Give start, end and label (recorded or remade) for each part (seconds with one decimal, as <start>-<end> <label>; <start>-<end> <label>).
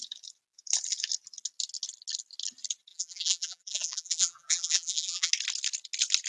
0.0-2.9 recorded; 2.9-5.3 remade; 5.3-6.3 recorded